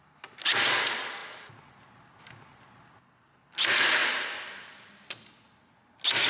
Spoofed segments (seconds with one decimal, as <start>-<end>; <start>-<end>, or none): none